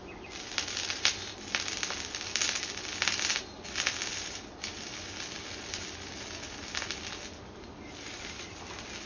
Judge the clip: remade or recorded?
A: recorded